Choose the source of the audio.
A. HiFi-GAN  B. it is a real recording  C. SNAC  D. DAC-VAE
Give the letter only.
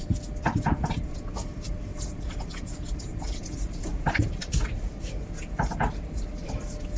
B